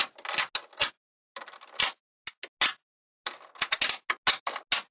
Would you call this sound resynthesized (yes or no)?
no